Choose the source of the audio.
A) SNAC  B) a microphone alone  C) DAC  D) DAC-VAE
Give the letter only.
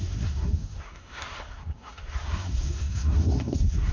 A